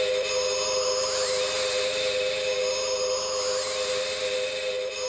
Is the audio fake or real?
real